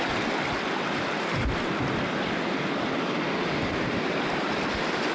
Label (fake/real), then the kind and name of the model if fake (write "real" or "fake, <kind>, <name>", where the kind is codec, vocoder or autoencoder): real